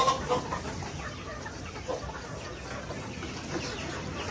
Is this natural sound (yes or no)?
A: yes